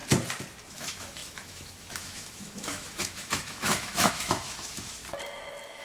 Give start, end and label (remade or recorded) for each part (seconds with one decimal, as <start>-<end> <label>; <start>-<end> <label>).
0.0-0.7 recorded; 0.7-5.0 remade; 5.0-5.8 recorded